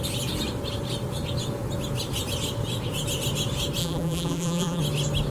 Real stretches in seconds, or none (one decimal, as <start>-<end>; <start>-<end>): 0.0-3.8; 4.8-5.3